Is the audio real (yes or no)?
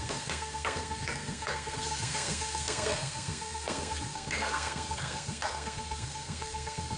no